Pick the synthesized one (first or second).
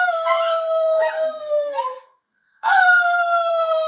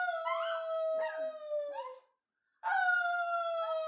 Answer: first